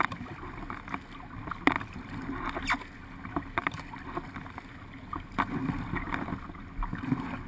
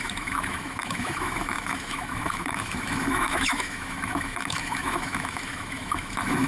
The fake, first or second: second